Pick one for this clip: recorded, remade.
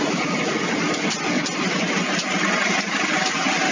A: recorded